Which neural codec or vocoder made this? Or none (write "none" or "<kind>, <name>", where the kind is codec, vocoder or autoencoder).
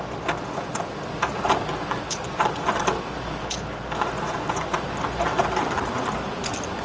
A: none